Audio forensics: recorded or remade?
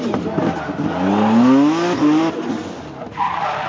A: recorded